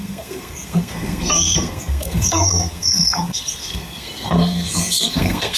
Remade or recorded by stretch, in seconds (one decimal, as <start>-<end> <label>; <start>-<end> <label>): 0.0-5.6 remade